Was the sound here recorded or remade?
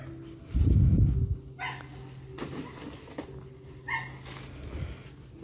recorded